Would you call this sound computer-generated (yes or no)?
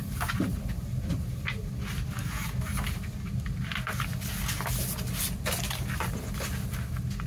no